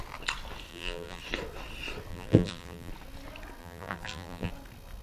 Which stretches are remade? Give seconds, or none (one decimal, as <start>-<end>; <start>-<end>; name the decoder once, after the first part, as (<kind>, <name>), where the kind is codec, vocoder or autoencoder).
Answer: 0.7-1.2 (vocoder, BigVGAN v2); 2.1-2.9; 3.6-4.5